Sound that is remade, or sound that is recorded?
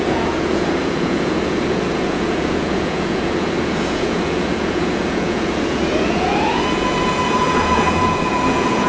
remade